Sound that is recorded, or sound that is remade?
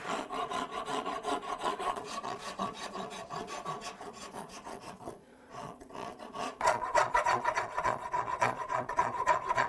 remade